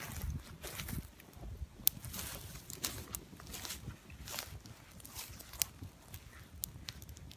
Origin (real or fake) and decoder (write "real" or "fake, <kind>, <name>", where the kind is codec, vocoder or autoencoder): real